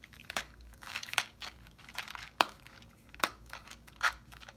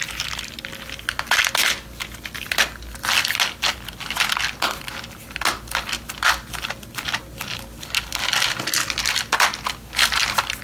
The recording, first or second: second